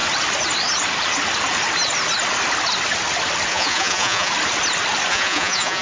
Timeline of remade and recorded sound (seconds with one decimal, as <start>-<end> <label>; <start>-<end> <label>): 0.0-3.5 recorded; 3.5-4.3 remade; 4.3-5.1 recorded; 5.1-5.8 remade